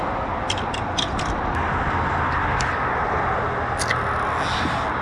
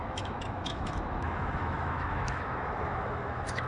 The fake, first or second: second